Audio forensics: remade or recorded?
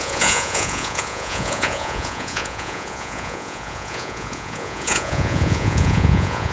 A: remade